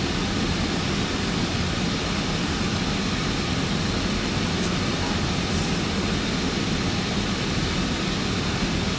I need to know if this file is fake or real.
real